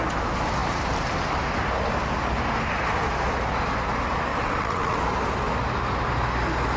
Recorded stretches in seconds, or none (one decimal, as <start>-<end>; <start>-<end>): 0.0-4.3; 5.0-6.8